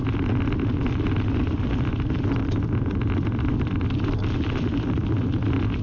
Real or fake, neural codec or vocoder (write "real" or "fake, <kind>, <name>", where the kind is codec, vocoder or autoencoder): real